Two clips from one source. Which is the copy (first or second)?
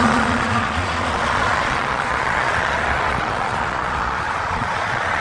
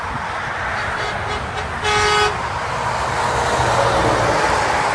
first